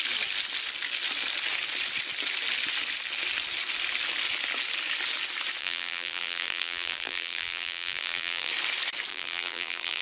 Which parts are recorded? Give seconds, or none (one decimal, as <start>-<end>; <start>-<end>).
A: 0.0-5.6; 8.5-9.1